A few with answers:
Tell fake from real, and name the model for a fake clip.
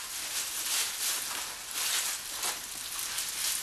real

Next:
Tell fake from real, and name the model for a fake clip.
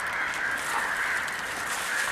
real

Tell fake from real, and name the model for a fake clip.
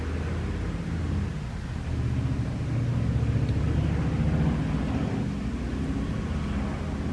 real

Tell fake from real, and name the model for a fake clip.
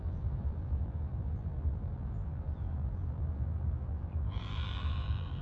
fake, vocoder, BigVGAN v2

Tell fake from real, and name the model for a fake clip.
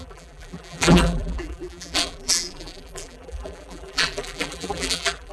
fake, vocoder, BigVGAN v2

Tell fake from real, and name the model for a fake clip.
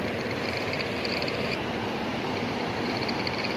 fake, vocoder, BigVGAN v2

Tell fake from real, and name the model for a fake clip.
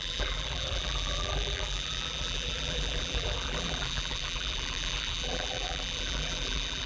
fake, vocoder, BigVGAN v2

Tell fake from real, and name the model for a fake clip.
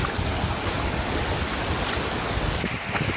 real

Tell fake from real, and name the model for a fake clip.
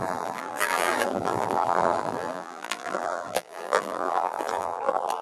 fake, vocoder, BigVGAN v2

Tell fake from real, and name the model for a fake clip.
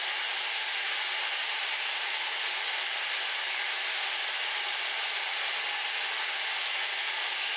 real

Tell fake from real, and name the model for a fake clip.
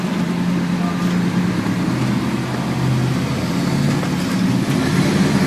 real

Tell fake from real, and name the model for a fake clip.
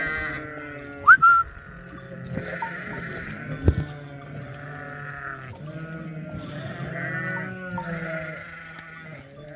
real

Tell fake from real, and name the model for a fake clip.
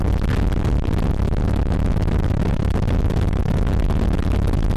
real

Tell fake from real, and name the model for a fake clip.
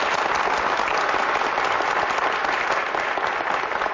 real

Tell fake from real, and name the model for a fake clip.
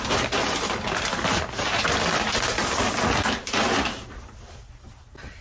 real